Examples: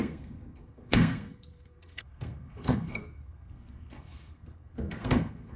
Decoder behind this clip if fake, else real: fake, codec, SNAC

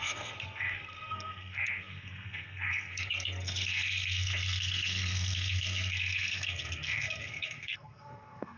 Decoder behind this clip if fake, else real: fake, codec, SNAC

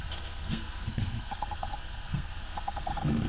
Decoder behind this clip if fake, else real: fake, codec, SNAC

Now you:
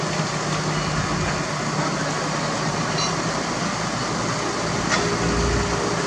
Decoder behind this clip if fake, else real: real